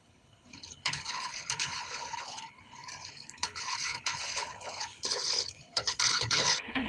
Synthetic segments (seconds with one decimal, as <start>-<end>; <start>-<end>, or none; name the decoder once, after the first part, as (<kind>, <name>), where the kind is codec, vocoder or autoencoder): 0.0-6.9 (codec, HILCodec)